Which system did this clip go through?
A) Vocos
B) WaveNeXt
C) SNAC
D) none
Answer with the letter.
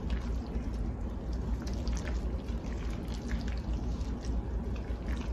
D